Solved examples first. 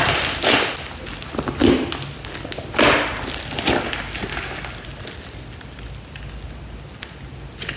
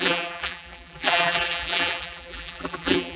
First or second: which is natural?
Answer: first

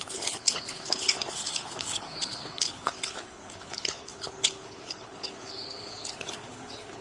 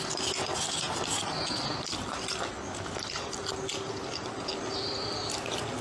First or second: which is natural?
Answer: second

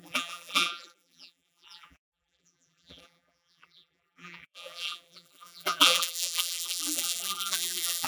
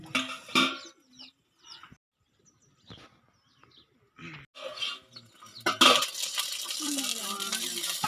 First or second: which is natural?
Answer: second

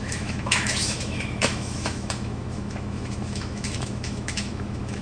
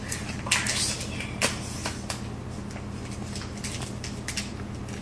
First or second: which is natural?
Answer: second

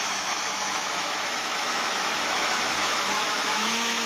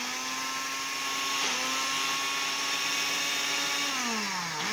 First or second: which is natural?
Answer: second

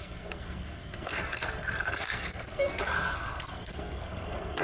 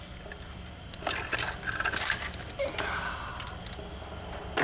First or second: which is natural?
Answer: second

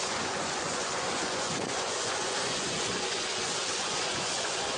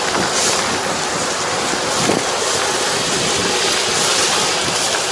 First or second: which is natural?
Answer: second